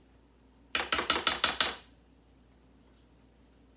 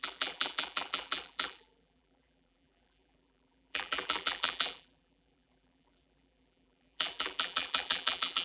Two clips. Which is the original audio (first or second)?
first